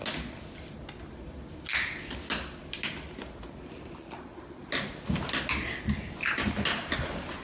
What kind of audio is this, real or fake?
real